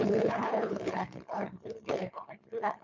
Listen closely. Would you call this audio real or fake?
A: fake